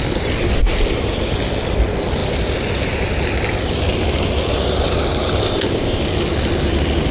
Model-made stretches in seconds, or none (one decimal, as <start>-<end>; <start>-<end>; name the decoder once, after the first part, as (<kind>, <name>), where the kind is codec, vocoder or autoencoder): 5.4-6.0 (codec, ZipCodec)